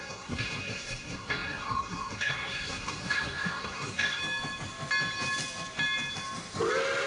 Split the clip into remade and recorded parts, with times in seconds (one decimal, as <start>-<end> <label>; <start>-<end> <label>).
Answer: 0.0-4.2 remade; 4.2-7.1 recorded